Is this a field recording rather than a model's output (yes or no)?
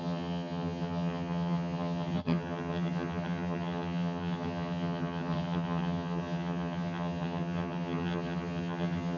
no